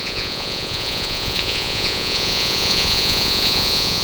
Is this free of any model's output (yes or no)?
no